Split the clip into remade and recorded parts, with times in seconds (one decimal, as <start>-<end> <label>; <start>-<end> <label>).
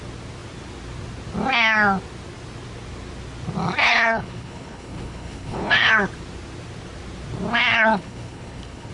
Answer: 0.0-3.8 recorded; 3.8-5.9 remade; 5.9-7.7 recorded; 7.7-8.9 remade